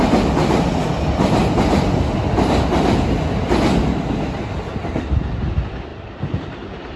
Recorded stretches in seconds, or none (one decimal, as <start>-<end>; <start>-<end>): 0.0-7.0